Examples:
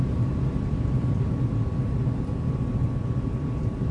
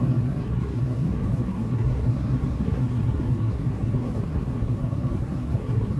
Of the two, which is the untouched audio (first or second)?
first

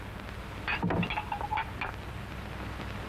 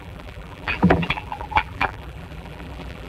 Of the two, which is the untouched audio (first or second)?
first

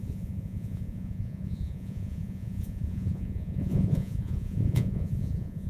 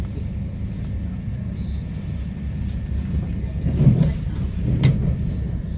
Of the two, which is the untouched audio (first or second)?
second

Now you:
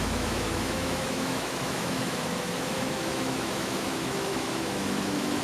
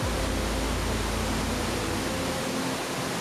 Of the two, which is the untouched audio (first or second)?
second